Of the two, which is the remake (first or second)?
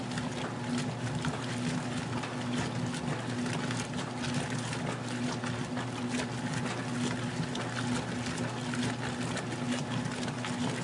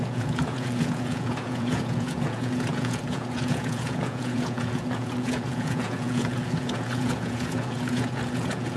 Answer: second